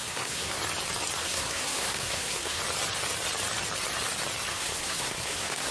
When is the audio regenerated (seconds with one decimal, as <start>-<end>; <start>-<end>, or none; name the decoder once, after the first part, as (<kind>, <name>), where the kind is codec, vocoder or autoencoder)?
0.0-0.6 (codec, SNAC); 1.2-2.6; 4.5-5.7